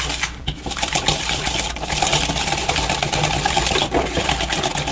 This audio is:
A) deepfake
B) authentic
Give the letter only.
B